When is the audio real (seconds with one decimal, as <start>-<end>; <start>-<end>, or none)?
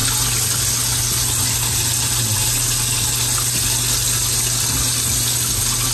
0.0-5.9